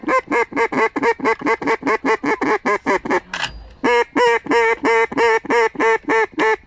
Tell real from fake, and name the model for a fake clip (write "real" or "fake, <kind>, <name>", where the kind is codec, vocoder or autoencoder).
real